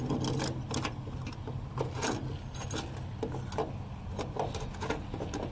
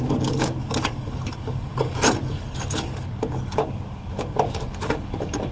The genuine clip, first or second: first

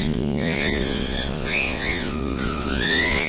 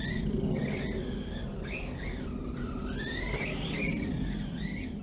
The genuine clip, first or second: second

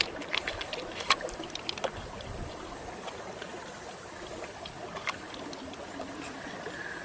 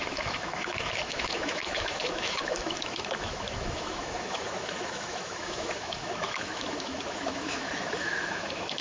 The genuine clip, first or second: first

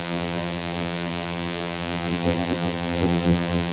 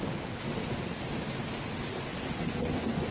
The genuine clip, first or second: second